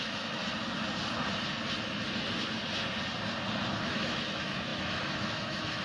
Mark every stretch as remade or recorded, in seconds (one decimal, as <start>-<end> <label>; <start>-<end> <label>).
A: 0.0-0.4 remade; 0.4-3.9 recorded; 3.9-5.8 remade